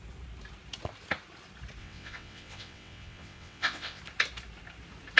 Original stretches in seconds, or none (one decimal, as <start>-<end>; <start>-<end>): 0.0-1.8; 4.0-5.2